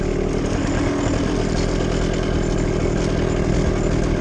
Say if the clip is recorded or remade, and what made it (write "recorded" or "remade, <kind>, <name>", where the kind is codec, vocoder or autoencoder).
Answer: recorded